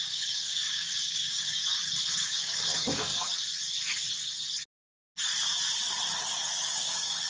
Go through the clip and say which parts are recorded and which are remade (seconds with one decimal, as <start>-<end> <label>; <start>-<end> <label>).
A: 0.0-1.6 remade; 1.6-2.1 recorded; 2.1-3.1 remade; 3.1-6.5 recorded; 6.5-7.3 remade